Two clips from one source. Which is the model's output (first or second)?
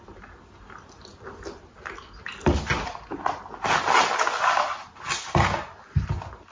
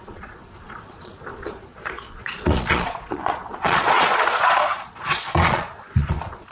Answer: second